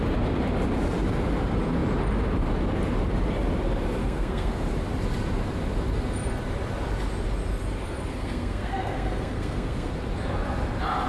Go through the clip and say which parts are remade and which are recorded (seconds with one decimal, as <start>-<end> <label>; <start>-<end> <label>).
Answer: 0.0-4.0 recorded; 4.0-4.5 remade; 4.5-8.1 recorded; 8.1-9.9 remade; 9.9-11.1 recorded